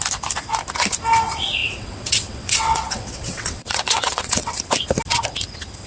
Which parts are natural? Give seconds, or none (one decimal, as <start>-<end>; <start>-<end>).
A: 0.0-1.6; 4.5-5.9